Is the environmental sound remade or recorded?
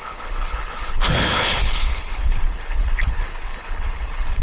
remade